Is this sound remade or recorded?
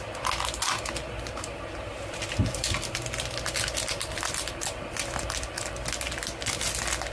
recorded